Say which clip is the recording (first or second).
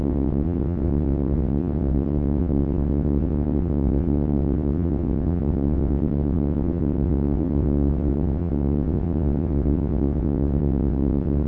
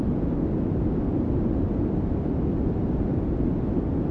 second